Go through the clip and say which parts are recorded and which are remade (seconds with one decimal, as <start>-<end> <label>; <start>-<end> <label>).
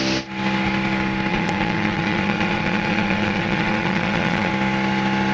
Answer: 0.0-1.3 recorded; 1.3-4.5 remade; 4.5-5.3 recorded